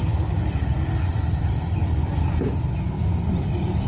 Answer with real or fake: real